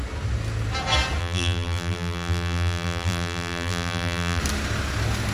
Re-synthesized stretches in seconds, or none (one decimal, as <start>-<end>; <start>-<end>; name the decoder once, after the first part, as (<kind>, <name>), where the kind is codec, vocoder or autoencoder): 1.2-4.4 (vocoder, BigVGAN v2)